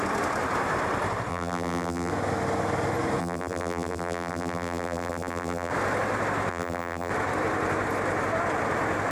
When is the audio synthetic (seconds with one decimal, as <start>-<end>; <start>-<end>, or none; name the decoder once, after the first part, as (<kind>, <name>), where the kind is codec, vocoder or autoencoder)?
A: 1.3-2.1 (vocoder, BigVGAN v2); 3.2-5.7; 6.5-7.1

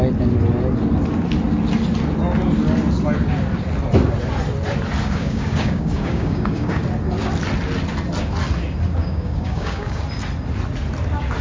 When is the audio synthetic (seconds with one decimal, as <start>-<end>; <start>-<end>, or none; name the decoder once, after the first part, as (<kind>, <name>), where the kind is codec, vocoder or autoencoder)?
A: 5.0-6.8 (codec, DAC); 9.0-10.0

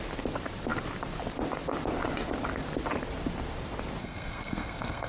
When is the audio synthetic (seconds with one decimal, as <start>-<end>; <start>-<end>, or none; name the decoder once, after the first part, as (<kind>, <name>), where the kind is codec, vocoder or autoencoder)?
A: 4.0-5.1 (codec, SNAC)

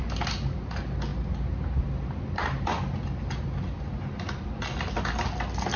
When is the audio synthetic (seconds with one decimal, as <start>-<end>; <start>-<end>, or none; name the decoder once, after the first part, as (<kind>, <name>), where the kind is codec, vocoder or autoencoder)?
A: none